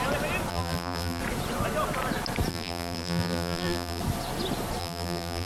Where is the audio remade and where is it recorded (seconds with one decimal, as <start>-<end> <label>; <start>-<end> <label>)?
0.0-0.5 recorded; 0.5-1.2 remade; 1.2-2.5 recorded; 2.5-4.0 remade; 4.0-4.8 recorded; 4.8-5.5 remade